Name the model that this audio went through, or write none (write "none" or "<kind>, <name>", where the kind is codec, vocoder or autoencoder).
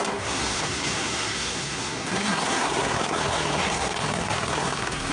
codec, SNAC